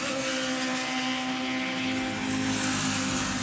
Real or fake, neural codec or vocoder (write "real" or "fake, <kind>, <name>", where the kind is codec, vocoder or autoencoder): real